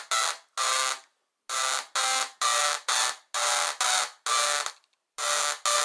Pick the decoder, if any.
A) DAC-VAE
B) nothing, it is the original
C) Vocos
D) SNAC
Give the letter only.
B